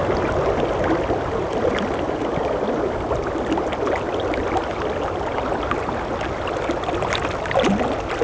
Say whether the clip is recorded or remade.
recorded